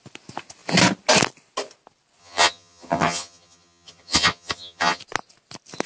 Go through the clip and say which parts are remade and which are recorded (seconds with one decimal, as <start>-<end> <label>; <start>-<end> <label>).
0.0-2.2 recorded; 2.2-5.0 remade; 5.0-5.9 recorded